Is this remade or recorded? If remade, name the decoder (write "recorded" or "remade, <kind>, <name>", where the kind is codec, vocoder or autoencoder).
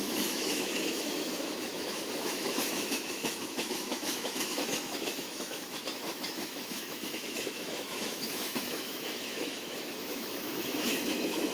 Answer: remade, autoencoder, DAC-VAE